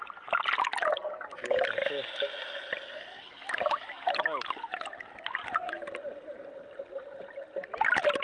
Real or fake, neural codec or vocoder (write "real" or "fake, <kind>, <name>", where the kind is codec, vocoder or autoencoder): real